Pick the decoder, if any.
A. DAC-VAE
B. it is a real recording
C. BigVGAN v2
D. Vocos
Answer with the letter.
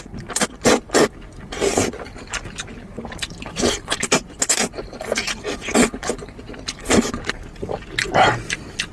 B